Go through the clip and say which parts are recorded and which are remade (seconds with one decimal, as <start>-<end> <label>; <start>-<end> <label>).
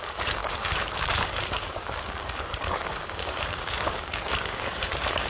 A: 0.0-5.3 remade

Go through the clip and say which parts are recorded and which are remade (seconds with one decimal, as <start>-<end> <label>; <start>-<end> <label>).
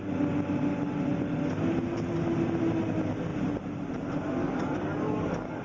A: 0.0-4.4 recorded; 4.4-5.6 remade